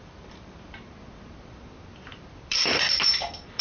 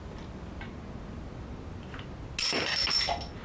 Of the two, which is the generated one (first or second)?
first